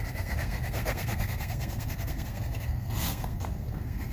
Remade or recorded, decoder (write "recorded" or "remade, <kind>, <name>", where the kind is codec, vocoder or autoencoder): remade, codec, SNAC